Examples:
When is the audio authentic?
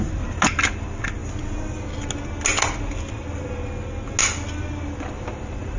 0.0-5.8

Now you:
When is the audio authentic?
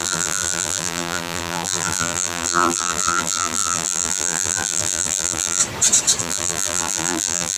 5.6-6.2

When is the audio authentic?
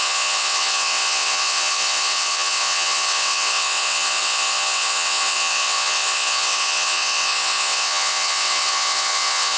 none